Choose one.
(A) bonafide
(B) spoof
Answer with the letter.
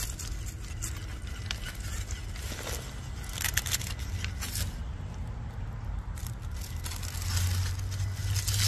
A